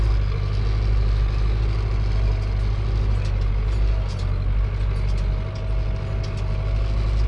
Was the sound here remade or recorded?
recorded